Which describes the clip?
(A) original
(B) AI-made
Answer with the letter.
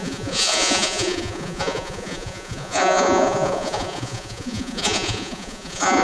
B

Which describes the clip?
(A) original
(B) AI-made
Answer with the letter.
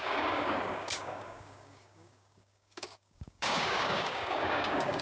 B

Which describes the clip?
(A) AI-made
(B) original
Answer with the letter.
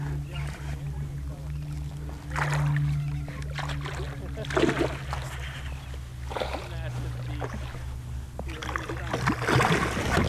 B